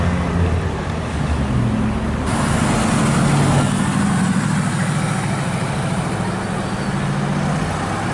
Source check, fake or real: real